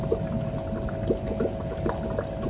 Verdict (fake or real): real